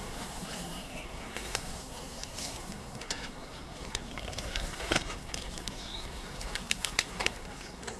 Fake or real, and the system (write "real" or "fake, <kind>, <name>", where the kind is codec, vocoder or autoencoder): fake, codec, SNAC